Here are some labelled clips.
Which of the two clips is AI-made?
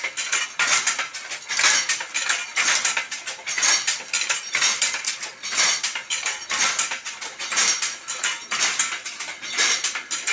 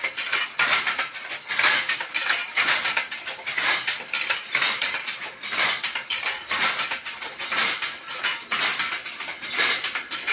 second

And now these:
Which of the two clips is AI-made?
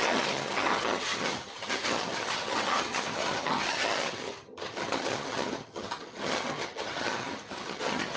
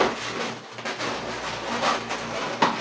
first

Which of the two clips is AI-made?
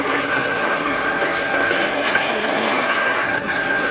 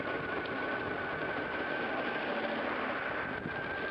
first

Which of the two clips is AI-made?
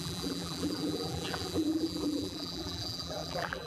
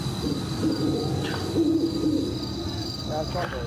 first